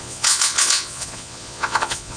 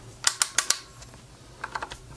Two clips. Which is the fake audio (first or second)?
first